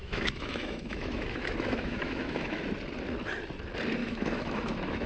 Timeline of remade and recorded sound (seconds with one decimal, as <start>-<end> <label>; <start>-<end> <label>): 0.0-2.6 remade; 2.6-4.0 recorded; 4.0-5.1 remade